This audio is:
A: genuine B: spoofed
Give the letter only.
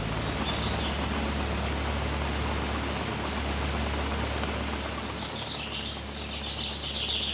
A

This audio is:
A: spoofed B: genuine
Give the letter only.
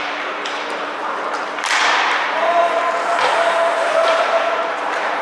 A